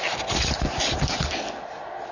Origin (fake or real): real